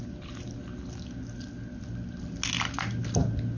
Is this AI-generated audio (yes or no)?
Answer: no